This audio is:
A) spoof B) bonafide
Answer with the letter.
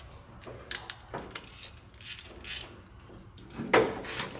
B